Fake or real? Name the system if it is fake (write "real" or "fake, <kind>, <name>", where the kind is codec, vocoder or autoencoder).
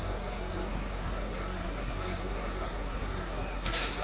fake, codec, SNAC